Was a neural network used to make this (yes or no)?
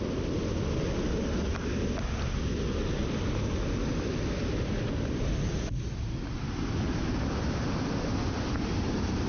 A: no